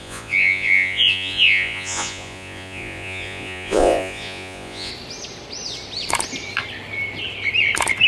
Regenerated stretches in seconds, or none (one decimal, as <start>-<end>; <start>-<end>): 0.0-4.9